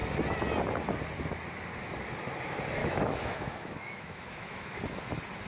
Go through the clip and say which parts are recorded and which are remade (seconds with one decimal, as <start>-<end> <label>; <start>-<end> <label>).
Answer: 0.0-2.8 recorded; 2.8-4.8 remade; 4.8-5.5 recorded